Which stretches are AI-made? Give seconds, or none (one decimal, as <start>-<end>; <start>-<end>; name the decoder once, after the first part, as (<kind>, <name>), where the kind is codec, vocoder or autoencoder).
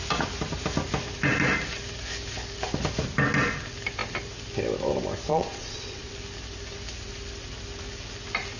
5.3-6.1 (vocoder, Vocos)